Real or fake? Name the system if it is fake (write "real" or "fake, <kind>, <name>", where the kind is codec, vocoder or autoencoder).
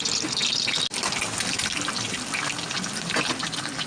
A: real